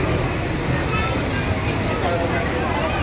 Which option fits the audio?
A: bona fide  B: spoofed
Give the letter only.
A